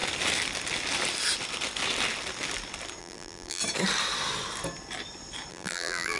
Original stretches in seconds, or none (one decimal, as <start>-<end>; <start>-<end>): 0.0-3.0; 3.6-5.5